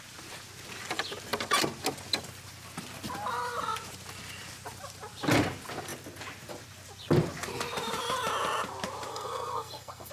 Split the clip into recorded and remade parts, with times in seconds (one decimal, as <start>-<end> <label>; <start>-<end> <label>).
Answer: 0.0-9.1 recorded; 9.1-10.1 remade